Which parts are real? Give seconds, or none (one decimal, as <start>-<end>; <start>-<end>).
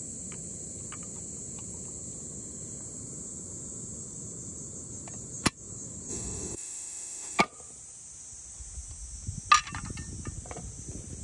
0.0-6.1; 7.4-11.2